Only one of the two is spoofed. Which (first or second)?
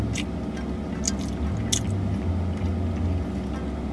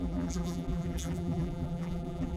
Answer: second